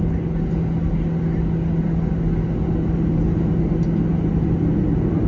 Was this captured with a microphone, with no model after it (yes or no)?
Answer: yes